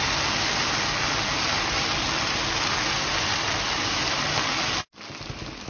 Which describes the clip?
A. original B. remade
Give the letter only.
A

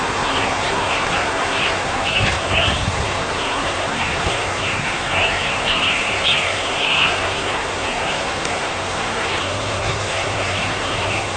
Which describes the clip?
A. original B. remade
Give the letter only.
B